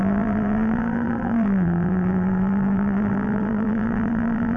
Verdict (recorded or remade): remade